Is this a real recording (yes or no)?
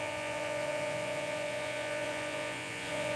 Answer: no